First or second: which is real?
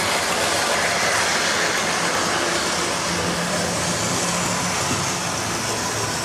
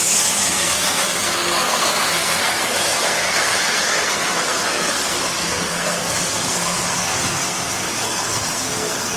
first